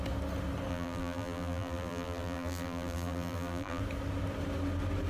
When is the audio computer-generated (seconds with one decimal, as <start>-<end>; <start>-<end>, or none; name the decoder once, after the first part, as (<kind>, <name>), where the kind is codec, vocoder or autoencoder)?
0.7-3.8 (vocoder, BigVGAN v2)